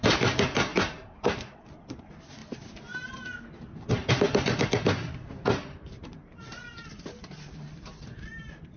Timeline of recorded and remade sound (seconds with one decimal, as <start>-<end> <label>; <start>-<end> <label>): 0.0-2.4 remade; 2.4-4.1 recorded; 4.1-8.8 remade